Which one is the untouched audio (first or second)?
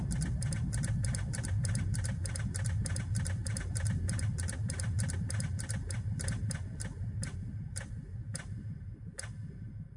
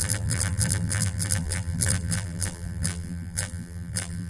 first